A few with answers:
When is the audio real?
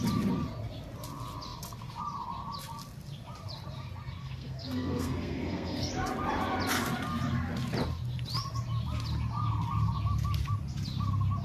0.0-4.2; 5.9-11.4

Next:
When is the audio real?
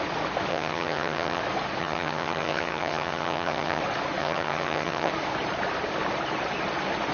0.0-0.5; 1.4-1.8; 3.8-4.2; 5.1-7.1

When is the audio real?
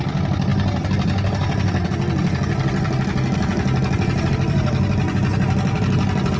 0.0-6.4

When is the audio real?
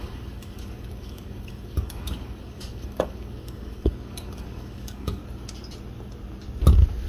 5.2-7.1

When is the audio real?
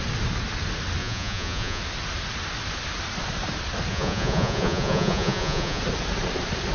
0.0-1.0; 1.8-3.9; 5.8-6.7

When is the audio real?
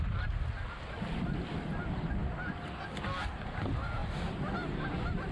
0.0-4.0